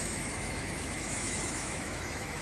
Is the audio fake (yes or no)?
yes